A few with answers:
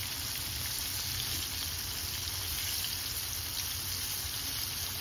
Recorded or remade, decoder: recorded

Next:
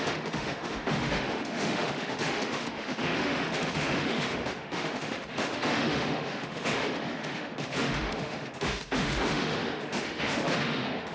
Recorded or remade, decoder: remade, autoencoder, DAC-VAE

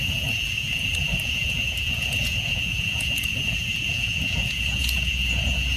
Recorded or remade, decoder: remade, vocoder, Vocos